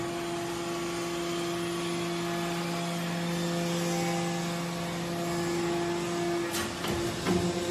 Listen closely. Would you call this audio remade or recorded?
recorded